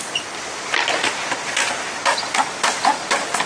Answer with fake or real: real